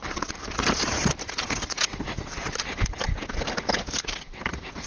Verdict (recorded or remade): recorded